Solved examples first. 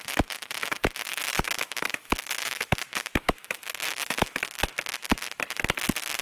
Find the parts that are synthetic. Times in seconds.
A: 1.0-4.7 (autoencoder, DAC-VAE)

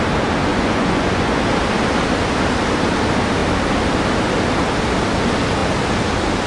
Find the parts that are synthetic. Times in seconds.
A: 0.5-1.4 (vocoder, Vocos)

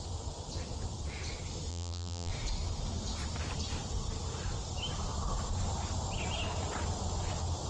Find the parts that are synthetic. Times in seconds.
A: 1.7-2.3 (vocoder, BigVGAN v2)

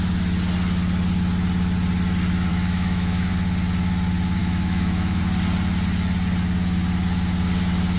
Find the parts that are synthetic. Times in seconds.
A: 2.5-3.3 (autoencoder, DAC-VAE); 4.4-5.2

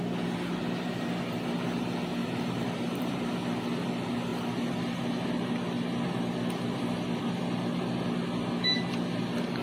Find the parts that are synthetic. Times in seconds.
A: 2.2-3.2 (vocoder, BigVGAN v2)

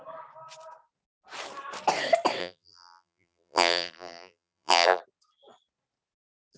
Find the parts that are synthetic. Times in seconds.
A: 2.4-5.0 (vocoder, BigVGAN v2)

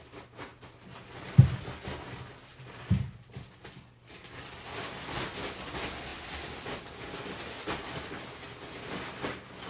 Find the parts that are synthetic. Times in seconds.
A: none